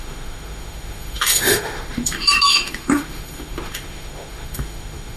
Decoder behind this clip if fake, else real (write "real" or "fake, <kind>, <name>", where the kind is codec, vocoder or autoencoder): fake, autoencoder, DAC-VAE